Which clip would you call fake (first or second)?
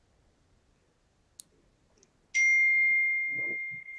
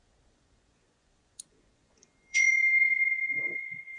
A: second